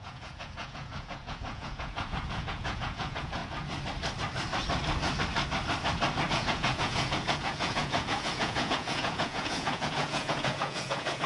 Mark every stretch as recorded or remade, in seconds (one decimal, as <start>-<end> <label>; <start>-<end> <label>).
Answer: 0.0-3.4 remade; 3.4-6.3 recorded; 6.3-11.3 remade